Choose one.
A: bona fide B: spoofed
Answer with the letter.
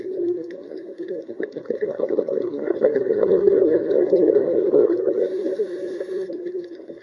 B